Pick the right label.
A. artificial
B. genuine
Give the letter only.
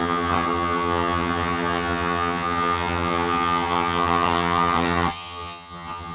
A